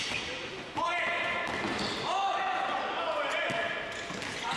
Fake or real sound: real